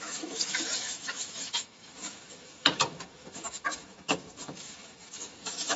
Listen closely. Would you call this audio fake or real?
fake